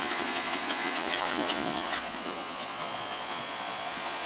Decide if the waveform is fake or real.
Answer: fake